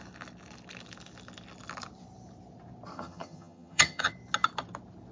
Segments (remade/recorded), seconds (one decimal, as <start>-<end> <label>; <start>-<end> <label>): 0.0-2.9 recorded; 2.9-4.1 remade; 4.1-5.1 recorded